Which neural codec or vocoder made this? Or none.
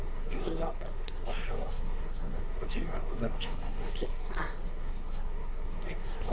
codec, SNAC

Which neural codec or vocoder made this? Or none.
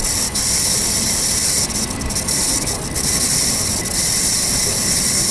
none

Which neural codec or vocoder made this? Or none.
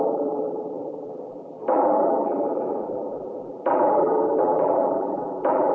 vocoder, BigVGAN v2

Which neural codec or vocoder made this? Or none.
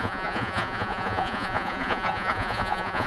vocoder, Vocos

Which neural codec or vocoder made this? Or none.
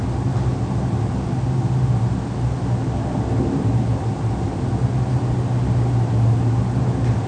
none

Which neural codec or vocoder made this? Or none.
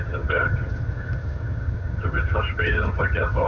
vocoder, HiFi-GAN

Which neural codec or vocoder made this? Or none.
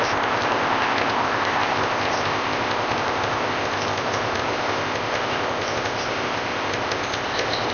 codec, ZipCodec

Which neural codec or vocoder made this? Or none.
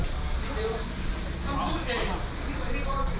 none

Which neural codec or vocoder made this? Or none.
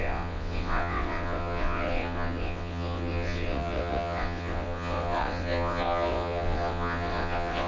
vocoder, WaveNeXt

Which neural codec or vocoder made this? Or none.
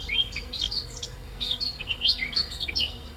codec, SNAC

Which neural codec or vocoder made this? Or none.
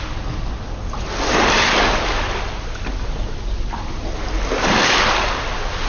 none